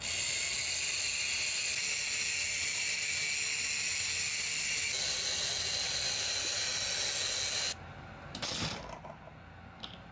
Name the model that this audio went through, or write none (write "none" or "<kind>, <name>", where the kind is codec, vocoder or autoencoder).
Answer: none